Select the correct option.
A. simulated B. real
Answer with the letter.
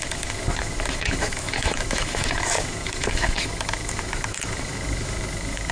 A